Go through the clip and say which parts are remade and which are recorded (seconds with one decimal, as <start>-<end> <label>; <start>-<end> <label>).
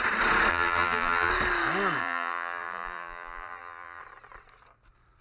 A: 0.0-0.5 recorded; 0.5-1.3 remade; 1.3-2.0 recorded; 2.0-4.0 remade; 4.0-5.2 recorded